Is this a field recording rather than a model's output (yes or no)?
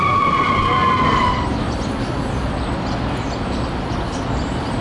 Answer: yes